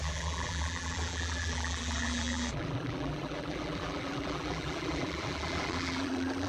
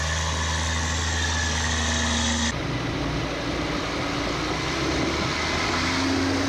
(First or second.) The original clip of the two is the second